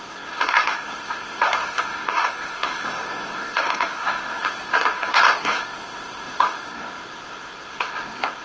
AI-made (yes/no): yes